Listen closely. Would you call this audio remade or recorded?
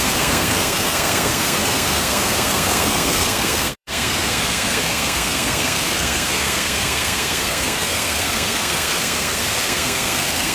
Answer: remade